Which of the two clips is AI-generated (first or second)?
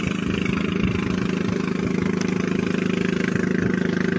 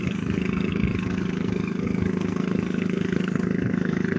second